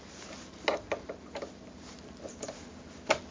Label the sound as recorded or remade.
recorded